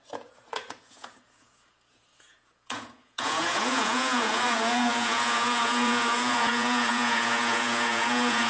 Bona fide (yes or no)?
no